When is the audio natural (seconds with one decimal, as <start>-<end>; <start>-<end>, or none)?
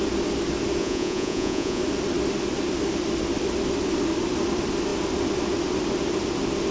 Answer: 0.0-0.8; 1.8-6.7